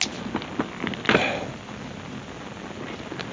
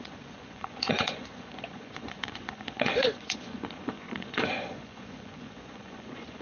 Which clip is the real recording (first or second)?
first